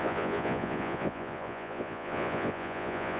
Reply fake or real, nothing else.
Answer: fake